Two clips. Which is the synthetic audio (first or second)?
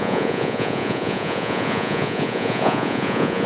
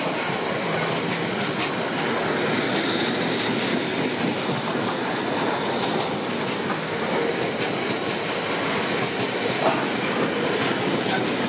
first